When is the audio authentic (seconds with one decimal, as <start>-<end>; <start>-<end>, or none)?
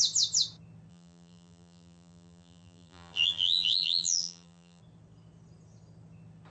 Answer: 0.0-0.9; 4.8-6.5